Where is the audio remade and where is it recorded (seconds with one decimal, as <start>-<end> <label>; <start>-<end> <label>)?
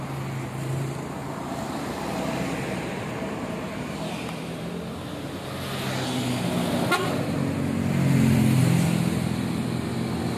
0.0-1.2 recorded; 1.2-4.7 remade; 4.7-10.4 recorded